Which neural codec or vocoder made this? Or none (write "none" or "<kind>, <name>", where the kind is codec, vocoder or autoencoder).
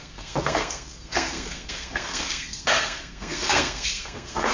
codec, SNAC